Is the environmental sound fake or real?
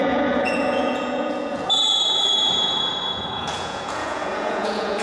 fake